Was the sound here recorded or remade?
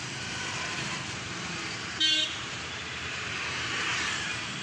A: remade